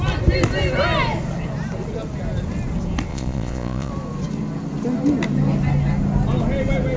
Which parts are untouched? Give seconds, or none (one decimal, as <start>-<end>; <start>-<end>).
0.0-3.1; 3.9-7.0